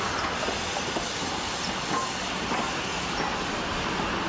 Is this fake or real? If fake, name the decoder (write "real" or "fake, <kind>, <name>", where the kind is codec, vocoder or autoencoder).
real